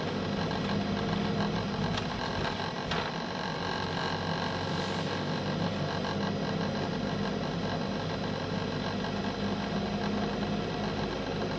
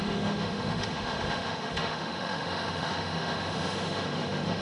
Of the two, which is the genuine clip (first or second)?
first